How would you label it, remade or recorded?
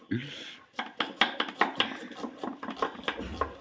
recorded